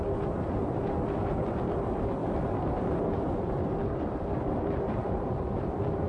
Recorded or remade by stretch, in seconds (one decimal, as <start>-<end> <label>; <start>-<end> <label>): 0.0-2.2 recorded; 2.2-6.1 remade